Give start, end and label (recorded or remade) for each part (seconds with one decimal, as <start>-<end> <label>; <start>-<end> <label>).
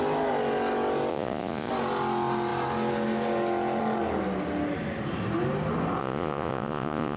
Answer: 0.0-1.1 recorded; 1.1-1.7 remade; 1.7-6.0 recorded; 6.0-7.2 remade